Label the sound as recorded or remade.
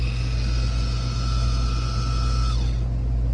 recorded